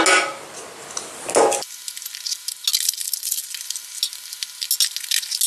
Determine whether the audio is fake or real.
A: real